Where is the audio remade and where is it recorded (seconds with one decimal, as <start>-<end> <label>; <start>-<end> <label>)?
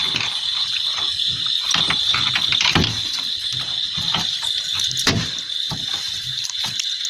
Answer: 0.0-7.1 recorded